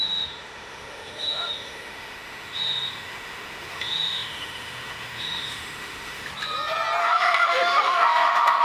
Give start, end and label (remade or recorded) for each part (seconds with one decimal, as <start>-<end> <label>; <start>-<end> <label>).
0.0-6.3 remade; 6.3-7.0 recorded; 7.0-8.6 remade